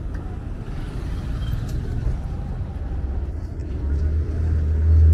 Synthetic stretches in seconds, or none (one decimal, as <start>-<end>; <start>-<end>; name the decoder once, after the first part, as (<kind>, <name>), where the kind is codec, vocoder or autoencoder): none